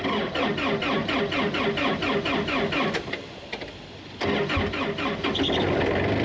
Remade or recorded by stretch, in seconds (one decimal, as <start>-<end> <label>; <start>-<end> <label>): 0.0-6.2 recorded